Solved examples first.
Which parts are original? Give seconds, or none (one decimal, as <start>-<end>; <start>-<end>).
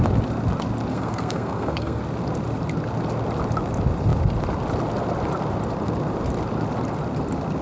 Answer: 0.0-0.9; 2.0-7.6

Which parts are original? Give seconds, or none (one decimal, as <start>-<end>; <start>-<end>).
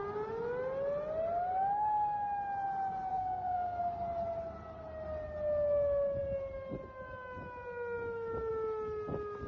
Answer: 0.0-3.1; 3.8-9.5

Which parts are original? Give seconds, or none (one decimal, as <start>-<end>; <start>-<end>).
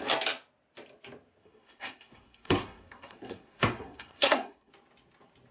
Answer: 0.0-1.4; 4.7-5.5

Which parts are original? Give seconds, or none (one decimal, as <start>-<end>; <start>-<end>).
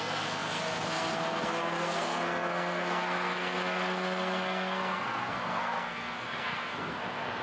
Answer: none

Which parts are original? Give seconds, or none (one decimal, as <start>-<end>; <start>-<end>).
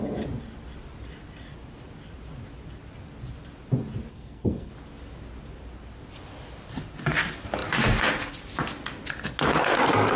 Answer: 0.0-4.1; 4.7-10.2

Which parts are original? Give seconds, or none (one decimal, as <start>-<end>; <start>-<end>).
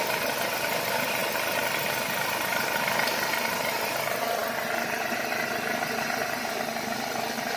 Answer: 0.0-7.6